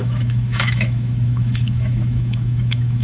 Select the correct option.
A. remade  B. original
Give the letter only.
A